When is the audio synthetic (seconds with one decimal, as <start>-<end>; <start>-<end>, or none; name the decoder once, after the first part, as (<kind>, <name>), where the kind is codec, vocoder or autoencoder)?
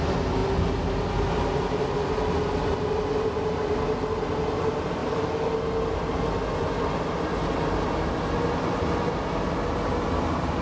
none